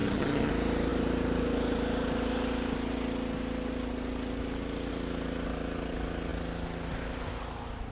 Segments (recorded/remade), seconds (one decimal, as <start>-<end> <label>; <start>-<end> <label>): 0.0-0.5 remade; 0.5-7.9 recorded